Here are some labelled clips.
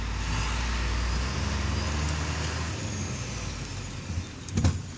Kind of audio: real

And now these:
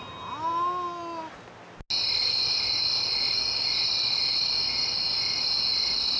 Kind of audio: real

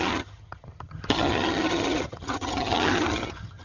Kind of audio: fake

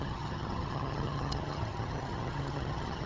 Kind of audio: fake